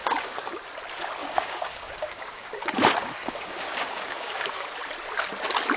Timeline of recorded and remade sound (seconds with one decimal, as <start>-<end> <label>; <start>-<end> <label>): 0.0-0.6 remade; 0.6-1.2 recorded; 1.2-4.7 remade; 4.7-5.8 recorded

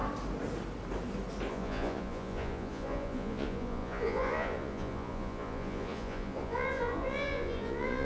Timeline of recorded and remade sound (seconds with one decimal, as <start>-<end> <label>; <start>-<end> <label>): 0.0-1.5 recorded; 1.5-8.0 remade

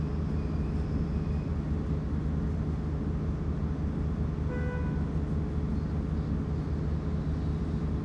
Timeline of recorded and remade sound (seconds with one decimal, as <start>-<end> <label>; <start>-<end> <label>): 0.0-8.0 recorded

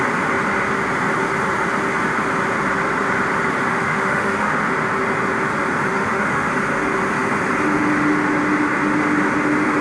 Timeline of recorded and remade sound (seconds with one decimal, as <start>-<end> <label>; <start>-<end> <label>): 0.0-3.7 recorded; 3.7-4.6 remade; 4.6-5.9 recorded; 5.9-6.5 remade; 6.5-9.8 recorded